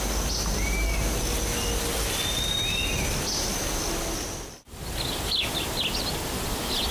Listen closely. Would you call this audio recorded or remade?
recorded